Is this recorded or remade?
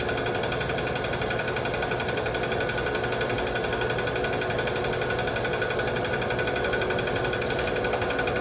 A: recorded